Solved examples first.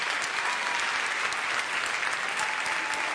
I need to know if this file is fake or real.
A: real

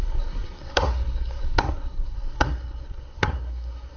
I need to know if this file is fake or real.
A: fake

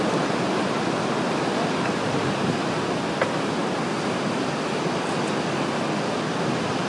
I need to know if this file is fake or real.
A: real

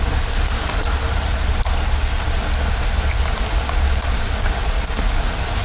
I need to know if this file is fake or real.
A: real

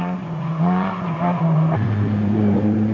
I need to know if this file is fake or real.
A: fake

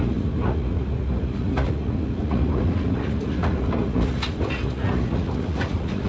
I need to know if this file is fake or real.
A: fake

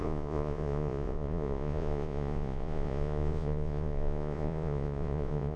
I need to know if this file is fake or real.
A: fake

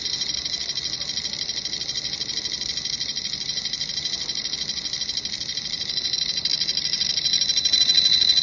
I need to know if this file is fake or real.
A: real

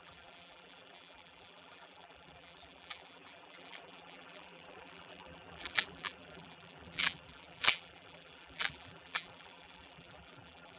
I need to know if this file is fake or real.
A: fake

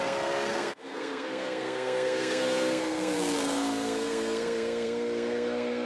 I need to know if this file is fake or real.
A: fake